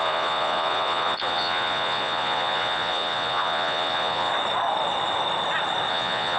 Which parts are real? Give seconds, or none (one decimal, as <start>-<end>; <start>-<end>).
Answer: 4.3-5.9